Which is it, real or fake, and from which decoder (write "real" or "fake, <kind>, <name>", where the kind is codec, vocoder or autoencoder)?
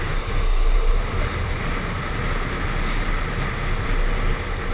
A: real